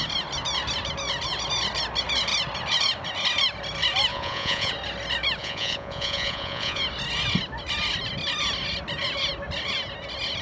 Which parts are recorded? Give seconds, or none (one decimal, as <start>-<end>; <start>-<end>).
0.0-4.1; 4.7-5.4; 6.8-10.4